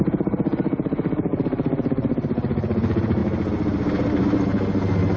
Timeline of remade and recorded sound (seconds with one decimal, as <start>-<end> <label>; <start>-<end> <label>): 0.0-3.2 remade; 3.2-5.2 recorded